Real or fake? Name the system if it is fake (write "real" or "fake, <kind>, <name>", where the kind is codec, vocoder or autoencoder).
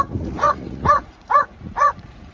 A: fake, vocoder, Vocos